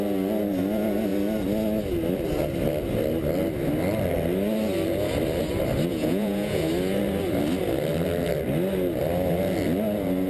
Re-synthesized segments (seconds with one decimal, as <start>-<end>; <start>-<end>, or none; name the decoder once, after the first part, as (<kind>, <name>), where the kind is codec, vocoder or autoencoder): 5.9-6.7 (vocoder, Vocos)